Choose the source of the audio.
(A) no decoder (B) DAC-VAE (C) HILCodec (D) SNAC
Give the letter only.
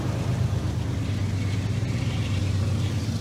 A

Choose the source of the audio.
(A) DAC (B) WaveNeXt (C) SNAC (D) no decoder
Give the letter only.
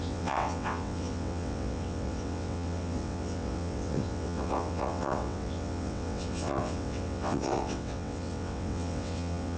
B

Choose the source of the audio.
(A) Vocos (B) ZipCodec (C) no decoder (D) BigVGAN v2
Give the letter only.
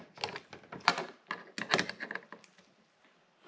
C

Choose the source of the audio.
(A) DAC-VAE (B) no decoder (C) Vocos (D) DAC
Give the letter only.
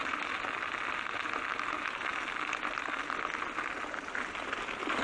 B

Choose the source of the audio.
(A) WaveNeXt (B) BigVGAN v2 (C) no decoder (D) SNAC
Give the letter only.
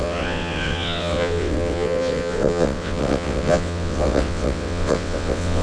A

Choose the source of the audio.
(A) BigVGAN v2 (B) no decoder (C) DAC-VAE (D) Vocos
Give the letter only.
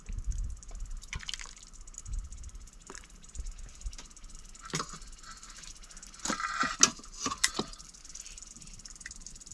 B